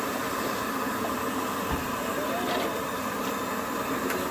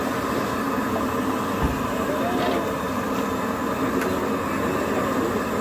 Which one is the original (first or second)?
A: second